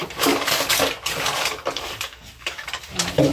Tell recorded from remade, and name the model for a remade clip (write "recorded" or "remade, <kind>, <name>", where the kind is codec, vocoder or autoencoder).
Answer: remade, codec, DAC